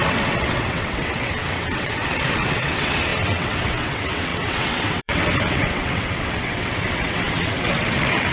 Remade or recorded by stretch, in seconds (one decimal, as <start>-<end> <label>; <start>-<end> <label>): 0.0-8.3 remade